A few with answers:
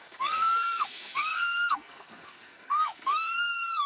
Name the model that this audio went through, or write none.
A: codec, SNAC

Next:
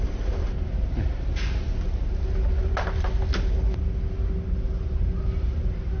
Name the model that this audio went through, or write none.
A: none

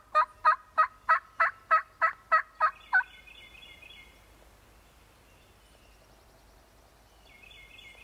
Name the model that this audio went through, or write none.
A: none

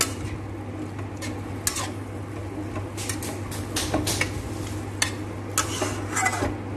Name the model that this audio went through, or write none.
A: none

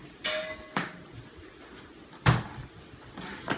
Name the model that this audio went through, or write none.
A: none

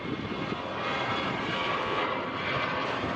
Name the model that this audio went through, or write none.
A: vocoder, BigVGAN v2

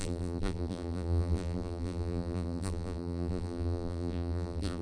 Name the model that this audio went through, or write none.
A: vocoder, BigVGAN v2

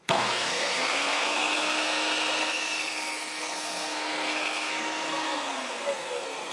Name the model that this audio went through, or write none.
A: codec, SNAC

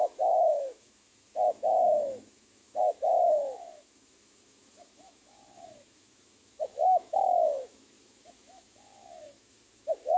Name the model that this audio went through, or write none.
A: autoencoder, DAC-VAE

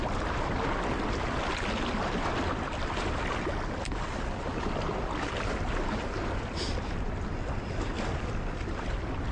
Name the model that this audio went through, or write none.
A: none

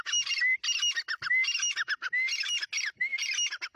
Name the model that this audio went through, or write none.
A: none